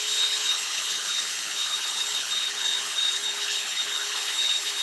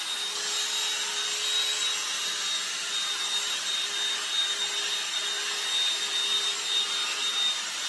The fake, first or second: first